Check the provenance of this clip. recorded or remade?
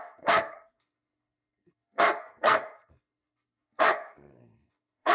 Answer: remade